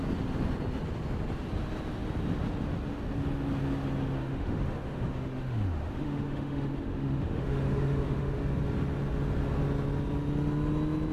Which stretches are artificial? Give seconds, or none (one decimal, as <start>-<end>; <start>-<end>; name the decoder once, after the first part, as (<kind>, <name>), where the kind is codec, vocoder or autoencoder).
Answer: 4.2-8.4 (autoencoder, DAC-VAE)